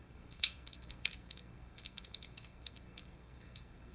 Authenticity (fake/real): fake